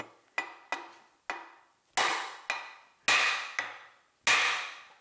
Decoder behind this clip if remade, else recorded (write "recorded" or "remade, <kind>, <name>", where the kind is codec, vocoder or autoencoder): recorded